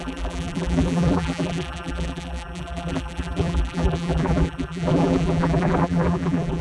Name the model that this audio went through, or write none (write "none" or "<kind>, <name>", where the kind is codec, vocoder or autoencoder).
vocoder, BigVGAN v2